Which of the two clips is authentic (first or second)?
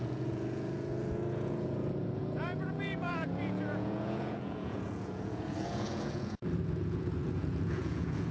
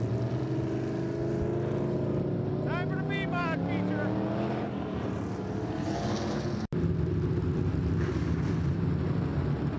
second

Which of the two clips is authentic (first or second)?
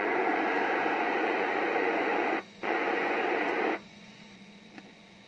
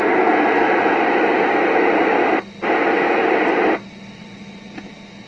second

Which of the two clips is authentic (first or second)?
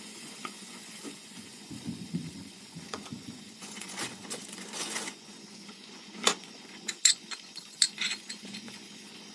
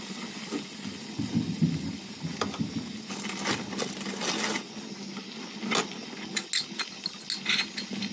second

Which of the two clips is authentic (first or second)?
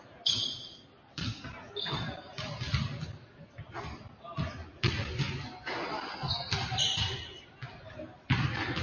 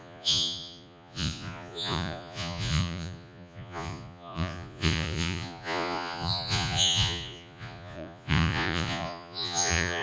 first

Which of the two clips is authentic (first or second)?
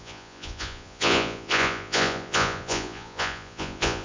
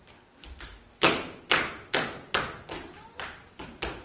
second